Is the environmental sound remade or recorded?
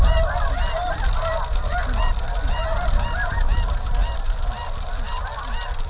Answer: recorded